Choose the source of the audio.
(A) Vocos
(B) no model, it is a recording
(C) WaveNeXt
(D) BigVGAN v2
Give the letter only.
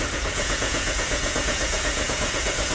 A